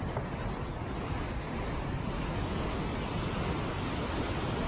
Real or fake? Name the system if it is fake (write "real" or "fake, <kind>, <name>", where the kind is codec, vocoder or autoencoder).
real